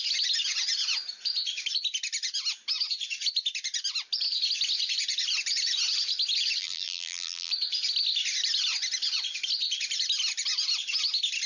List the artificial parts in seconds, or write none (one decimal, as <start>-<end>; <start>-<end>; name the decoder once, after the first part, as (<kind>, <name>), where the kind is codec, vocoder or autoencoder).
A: 6.6-7.5 (vocoder, BigVGAN v2)